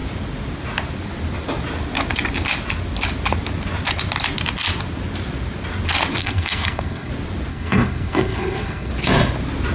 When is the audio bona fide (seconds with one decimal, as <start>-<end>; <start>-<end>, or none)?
0.0-6.2; 7.1-7.5; 8.9-9.7